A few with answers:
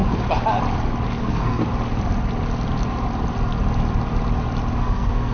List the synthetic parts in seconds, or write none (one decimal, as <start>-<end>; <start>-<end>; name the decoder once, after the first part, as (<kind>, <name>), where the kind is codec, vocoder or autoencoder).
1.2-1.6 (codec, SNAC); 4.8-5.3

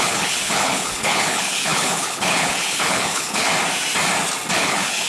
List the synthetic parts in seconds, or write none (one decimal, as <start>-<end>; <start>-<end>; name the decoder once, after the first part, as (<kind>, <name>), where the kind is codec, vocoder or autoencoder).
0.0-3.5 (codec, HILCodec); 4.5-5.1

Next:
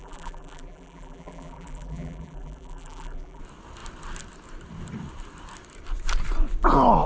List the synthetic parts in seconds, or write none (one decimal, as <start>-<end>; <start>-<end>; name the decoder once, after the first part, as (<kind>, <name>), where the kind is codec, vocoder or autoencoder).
0.0-3.4 (vocoder, BigVGAN v2)

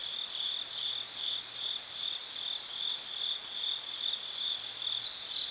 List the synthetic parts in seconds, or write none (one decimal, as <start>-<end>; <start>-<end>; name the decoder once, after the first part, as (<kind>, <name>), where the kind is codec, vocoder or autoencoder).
none

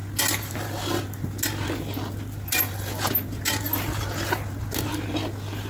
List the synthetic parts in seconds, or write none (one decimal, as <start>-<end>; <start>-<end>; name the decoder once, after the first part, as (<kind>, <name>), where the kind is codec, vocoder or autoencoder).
none